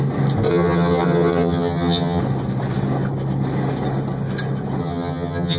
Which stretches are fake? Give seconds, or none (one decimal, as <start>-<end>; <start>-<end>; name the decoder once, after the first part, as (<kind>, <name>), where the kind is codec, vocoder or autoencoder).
0.5-2.2 (vocoder, HiFi-GAN); 4.8-5.6